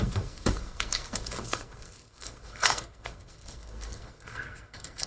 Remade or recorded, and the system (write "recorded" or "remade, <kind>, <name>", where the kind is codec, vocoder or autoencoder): remade, codec, SNAC